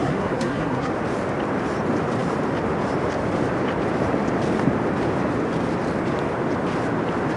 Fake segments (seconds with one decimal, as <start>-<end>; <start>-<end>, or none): 0.0-0.9